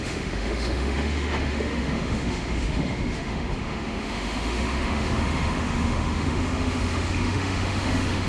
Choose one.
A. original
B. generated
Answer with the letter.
B